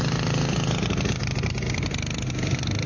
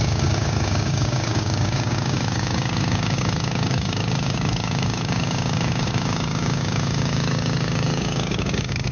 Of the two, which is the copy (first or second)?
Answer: second